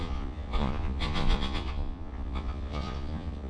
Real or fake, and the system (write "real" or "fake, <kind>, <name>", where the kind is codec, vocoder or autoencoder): fake, vocoder, Vocos